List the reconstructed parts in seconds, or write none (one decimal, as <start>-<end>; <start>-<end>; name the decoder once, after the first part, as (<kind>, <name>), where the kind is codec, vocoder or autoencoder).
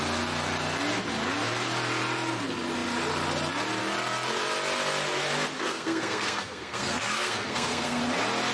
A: 5.6-8.0 (codec, SNAC)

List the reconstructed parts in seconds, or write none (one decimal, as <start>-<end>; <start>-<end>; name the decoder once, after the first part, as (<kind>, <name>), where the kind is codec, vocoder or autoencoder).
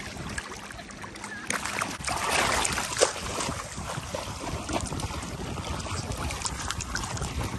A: none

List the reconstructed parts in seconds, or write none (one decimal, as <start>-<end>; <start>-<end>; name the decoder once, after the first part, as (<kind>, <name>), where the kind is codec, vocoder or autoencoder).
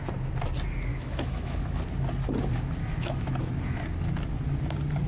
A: 0.9-1.6 (autoencoder, DAC-VAE); 2.8-3.5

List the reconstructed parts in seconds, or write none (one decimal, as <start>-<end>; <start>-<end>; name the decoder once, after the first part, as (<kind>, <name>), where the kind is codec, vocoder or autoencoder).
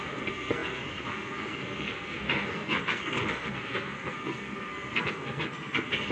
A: 0.0-6.1 (codec, SNAC)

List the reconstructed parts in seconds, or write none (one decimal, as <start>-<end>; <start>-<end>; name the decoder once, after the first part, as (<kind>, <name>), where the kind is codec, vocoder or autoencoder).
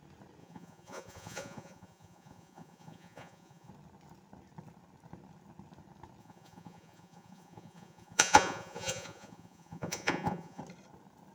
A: 0.4-3.7 (vocoder, Vocos); 6.2-10.6